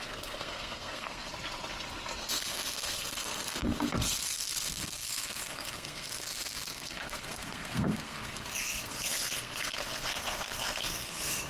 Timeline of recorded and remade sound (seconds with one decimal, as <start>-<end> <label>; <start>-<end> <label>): 0.0-1.3 remade; 1.3-2.2 recorded; 2.2-11.5 remade

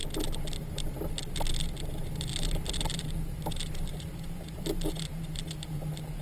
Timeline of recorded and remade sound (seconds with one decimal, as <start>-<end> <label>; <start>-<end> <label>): 0.0-2.3 recorded; 2.3-6.2 remade